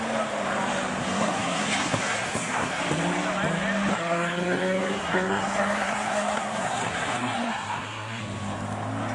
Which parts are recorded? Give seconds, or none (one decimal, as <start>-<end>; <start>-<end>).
0.0-1.1; 2.8-3.9; 8.2-9.1

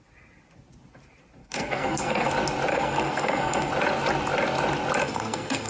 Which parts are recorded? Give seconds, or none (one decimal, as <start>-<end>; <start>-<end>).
0.0-1.4; 2.3-2.7; 3.7-5.0

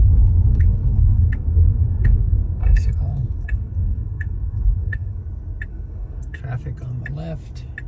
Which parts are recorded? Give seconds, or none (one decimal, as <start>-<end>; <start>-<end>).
0.0-0.5; 5.2-5.7; 6.4-7.9